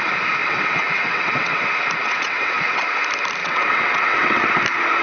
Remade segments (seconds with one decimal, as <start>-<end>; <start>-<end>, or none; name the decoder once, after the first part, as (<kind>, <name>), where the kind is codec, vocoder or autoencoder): 0.4-1.6 (vocoder, WaveNeXt); 2.0-2.8; 3.4-4.5

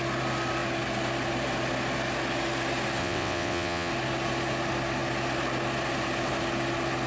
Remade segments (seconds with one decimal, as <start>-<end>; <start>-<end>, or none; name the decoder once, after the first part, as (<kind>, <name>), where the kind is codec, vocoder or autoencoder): 3.0-3.9 (vocoder, WaveNeXt)

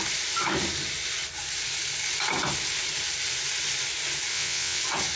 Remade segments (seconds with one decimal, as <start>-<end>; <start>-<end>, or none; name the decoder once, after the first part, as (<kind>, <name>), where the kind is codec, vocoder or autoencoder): 4.3-4.8 (vocoder, WaveNeXt)

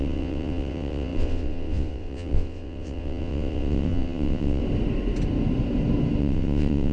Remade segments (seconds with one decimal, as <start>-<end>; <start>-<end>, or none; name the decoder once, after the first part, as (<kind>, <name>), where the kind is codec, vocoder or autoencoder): 0.0-4.6 (vocoder, WaveNeXt); 6.2-6.9

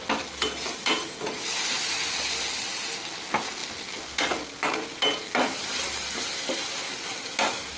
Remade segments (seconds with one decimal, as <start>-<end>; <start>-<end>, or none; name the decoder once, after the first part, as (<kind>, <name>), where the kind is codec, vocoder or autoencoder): none

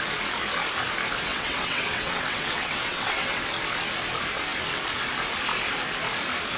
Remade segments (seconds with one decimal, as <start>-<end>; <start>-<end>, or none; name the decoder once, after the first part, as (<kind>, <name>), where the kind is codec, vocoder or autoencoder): 1.3-3.4 (vocoder, WaveNeXt)

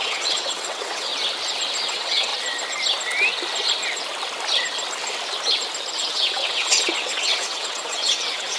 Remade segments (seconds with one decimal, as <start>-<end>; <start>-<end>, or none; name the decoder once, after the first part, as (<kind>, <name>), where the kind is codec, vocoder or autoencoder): 0.0-1.1 (vocoder, WaveNeXt); 1.9-2.3; 5.9-8.6

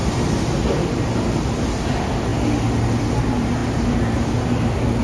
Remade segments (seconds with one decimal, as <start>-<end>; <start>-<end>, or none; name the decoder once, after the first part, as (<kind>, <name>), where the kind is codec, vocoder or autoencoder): none